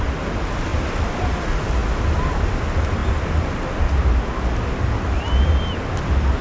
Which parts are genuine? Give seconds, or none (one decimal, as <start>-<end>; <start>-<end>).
0.0-6.4